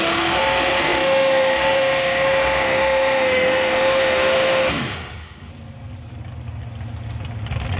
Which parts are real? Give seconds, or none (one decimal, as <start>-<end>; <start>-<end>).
5.5-7.8